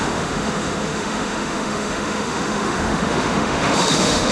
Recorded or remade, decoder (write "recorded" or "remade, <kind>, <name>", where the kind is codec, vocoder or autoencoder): remade, autoencoder, DAC-VAE